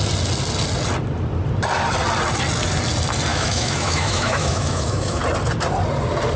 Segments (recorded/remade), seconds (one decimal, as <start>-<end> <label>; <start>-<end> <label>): 0.0-3.3 recorded; 3.3-5.2 remade; 5.2-6.4 recorded